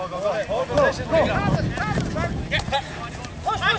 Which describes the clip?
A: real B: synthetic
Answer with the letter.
A